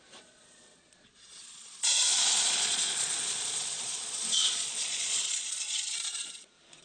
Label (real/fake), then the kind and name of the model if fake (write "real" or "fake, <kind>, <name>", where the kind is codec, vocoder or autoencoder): fake, vocoder, Vocos